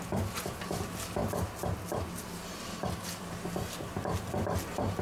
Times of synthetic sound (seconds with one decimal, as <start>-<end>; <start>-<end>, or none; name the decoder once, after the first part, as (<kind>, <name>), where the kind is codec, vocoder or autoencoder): none